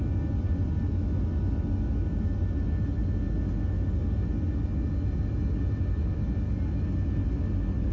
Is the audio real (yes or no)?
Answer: yes